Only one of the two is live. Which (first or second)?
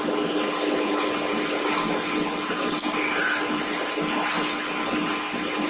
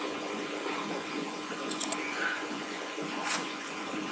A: first